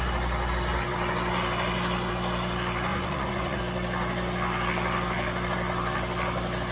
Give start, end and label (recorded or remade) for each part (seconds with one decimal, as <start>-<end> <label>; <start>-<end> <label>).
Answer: 0.0-2.9 recorded; 2.9-3.6 remade; 3.6-6.7 recorded